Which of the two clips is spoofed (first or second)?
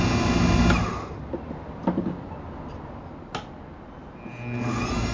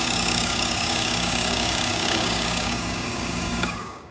second